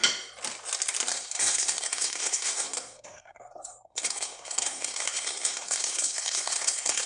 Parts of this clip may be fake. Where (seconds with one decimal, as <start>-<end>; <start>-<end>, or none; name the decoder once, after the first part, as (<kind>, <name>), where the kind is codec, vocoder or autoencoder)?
1.1-7.1 (codec, SNAC)

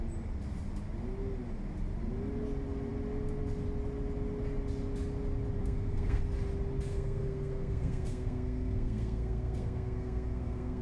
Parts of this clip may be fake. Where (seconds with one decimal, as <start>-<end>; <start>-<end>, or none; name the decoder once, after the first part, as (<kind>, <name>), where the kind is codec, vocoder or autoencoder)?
5.6-6.2 (codec, SNAC); 6.9-10.8

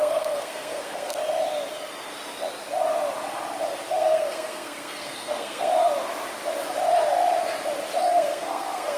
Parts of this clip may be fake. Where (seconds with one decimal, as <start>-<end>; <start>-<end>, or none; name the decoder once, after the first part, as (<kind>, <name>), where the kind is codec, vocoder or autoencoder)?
0.0-1.2 (codec, SNAC); 3.9-5.7; 8.0-9.0

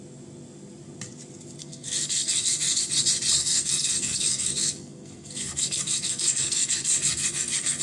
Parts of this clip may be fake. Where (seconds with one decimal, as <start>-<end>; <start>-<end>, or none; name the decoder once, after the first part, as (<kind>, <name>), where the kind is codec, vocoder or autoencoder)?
1.6-2.8 (codec, SNAC); 3.4-7.8

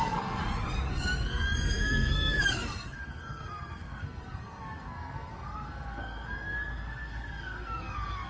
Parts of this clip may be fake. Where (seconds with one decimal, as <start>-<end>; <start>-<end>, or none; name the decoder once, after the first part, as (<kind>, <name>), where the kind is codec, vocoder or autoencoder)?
0.0-0.4 (codec, SNAC); 0.9-8.3